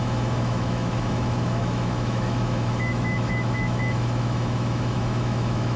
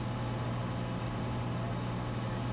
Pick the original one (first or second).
second